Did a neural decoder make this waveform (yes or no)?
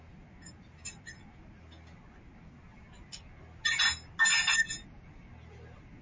no